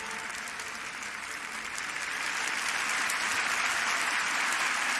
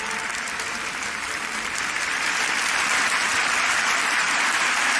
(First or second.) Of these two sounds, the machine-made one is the second